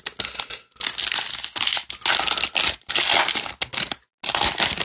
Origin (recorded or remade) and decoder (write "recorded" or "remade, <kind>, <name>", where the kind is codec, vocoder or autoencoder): recorded